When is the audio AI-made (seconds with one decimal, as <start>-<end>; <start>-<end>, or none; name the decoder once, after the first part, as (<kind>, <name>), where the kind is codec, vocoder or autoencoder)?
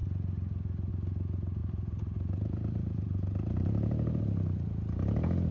1.6-4.2 (vocoder, BigVGAN v2)